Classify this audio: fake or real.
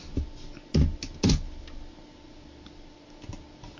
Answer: real